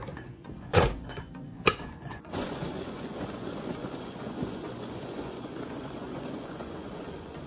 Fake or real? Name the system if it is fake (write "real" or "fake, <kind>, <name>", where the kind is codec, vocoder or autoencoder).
fake, vocoder, Vocos